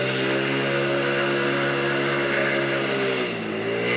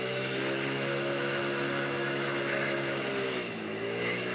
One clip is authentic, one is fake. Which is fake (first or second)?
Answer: second